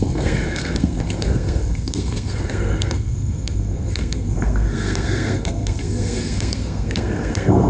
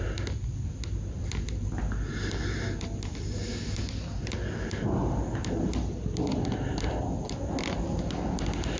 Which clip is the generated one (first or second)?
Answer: first